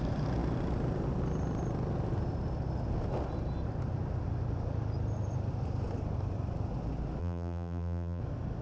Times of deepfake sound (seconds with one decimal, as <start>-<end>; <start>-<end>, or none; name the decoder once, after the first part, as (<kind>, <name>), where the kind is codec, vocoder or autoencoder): 7.2-8.2 (vocoder, BigVGAN v2)